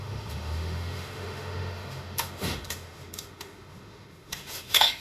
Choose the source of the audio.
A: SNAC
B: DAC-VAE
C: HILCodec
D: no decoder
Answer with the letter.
B